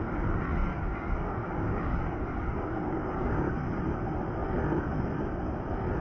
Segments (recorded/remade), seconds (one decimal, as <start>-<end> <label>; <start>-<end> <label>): 0.0-0.7 recorded; 0.7-3.5 remade; 3.5-6.0 recorded